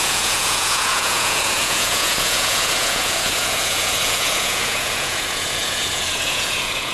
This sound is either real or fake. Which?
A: fake